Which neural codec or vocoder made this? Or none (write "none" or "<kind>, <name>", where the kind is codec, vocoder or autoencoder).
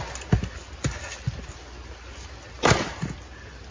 none